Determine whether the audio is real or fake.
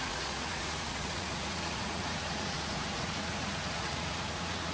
fake